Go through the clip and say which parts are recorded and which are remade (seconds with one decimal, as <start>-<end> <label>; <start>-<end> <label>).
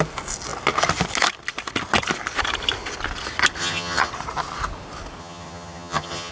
0.0-3.6 recorded; 3.6-4.1 remade; 4.1-5.2 recorded; 5.2-6.3 remade